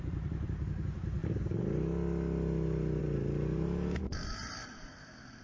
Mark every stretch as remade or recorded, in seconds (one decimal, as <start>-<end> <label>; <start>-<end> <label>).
0.0-1.2 remade; 1.2-3.0 recorded; 3.0-5.4 remade